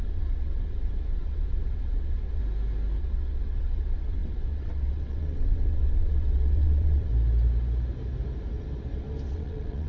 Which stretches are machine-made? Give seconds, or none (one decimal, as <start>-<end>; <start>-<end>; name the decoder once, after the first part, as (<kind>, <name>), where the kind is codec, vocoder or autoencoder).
0.0-2.4 (vocoder, WaveNeXt); 3.0-7.1; 9.3-9.9